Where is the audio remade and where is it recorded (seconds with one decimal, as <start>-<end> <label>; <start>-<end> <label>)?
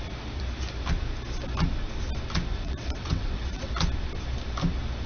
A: 0.0-2.5 recorded; 2.5-3.7 remade; 3.7-5.1 recorded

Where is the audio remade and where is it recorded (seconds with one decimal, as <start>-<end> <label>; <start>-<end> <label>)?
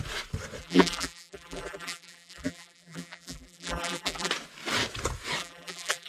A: 0.0-0.6 recorded; 0.6-4.3 remade; 4.3-5.4 recorded; 5.4-6.1 remade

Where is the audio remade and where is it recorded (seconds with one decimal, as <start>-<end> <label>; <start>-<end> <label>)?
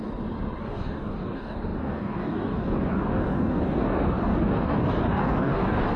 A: 0.0-0.6 recorded; 0.6-6.0 remade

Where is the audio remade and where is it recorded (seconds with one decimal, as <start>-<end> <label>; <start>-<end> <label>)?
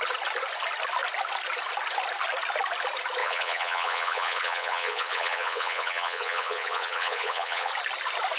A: 0.0-3.2 recorded; 3.2-7.7 remade; 7.7-8.4 recorded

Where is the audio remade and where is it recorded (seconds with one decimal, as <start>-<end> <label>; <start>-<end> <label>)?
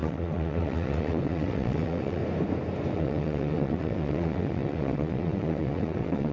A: 0.0-2.2 remade; 2.2-2.9 recorded; 2.9-6.3 remade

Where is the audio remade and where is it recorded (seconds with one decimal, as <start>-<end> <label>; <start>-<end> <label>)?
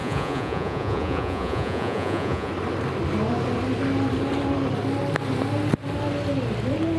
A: 0.0-2.5 remade; 2.5-7.0 recorded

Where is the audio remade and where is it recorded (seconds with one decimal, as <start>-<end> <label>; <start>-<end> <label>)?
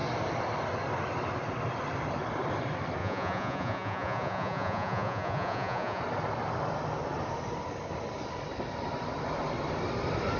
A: 0.0-3.0 recorded; 3.0-6.0 remade; 6.0-10.4 recorded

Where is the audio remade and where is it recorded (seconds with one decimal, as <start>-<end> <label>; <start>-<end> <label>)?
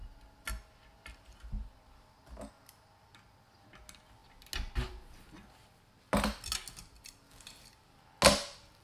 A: 0.0-8.8 recorded